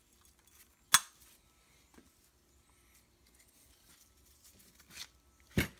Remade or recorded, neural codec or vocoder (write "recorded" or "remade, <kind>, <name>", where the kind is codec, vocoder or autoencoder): recorded